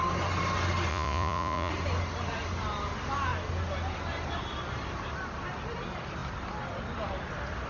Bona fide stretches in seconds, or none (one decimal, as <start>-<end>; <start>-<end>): 0.0-0.9; 1.7-7.7